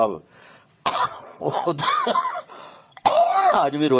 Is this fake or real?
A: fake